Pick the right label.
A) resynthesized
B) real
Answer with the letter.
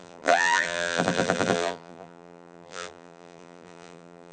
A